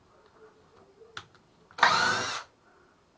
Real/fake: real